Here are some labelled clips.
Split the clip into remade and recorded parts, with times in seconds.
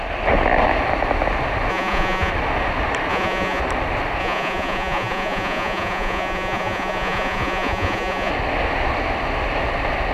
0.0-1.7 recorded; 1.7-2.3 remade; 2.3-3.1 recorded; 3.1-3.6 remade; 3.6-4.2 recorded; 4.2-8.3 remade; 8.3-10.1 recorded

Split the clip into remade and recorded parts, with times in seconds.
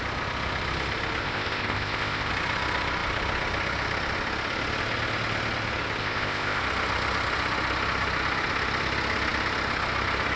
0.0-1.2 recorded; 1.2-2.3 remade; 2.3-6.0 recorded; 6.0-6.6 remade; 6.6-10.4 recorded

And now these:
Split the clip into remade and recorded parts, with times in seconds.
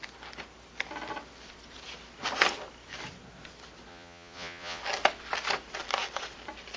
0.0-3.9 recorded; 3.9-4.8 remade; 4.8-6.8 recorded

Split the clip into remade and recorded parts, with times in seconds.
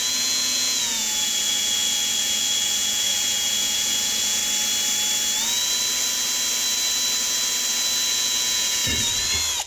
0.0-4.4 remade; 4.4-8.1 recorded; 8.1-8.8 remade; 8.8-9.7 recorded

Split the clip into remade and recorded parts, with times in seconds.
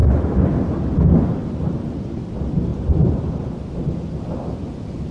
0.0-5.1 recorded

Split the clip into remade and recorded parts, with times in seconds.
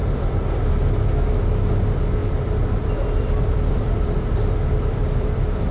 0.0-0.7 remade; 0.7-2.2 recorded; 2.2-5.7 remade